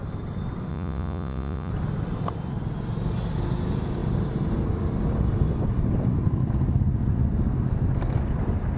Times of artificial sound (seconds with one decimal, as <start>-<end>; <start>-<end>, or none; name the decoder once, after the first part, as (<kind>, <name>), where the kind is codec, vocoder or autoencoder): 0.7-1.7 (vocoder, Vocos)